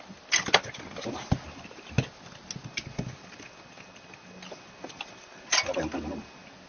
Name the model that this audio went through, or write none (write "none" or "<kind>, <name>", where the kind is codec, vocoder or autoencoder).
none